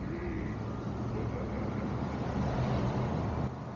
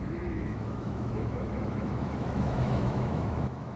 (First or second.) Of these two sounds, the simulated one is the second